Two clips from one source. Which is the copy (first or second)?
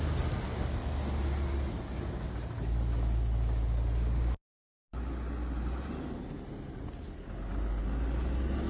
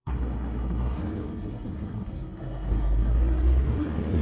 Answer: second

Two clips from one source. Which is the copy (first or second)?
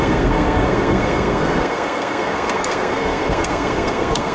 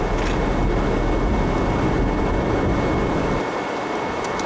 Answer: first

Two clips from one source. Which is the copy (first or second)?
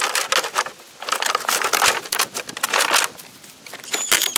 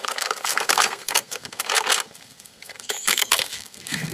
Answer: second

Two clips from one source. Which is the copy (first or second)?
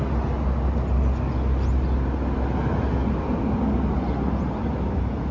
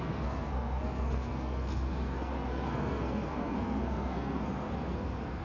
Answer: second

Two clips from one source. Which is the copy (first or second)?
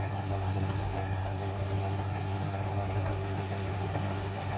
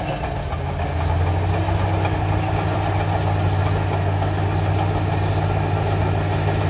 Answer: first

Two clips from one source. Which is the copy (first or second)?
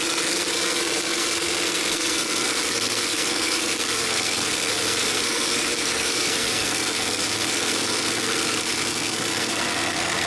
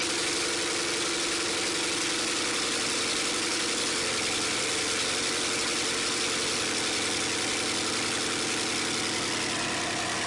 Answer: first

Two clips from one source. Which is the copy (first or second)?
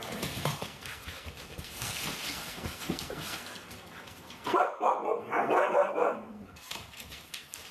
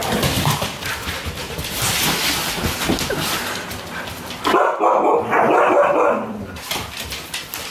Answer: first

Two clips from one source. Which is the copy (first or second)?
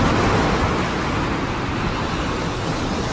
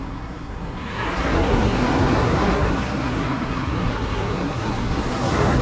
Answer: second